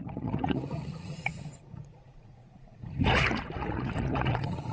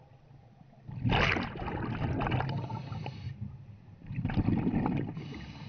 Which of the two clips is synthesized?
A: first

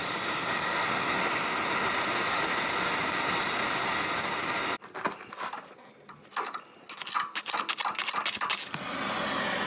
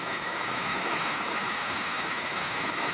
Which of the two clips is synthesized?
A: second